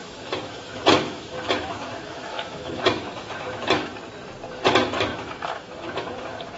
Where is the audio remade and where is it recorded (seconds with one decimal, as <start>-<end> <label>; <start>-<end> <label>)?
0.0-3.9 remade; 3.9-4.5 recorded; 4.5-6.6 remade